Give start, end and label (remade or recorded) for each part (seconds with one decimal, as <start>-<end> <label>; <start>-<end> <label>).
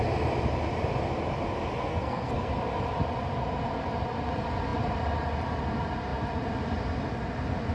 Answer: 0.0-1.9 recorded; 1.9-2.5 remade; 2.5-7.7 recorded